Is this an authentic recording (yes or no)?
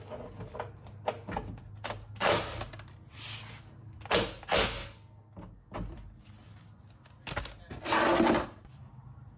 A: yes